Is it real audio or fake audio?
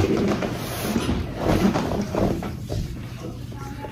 fake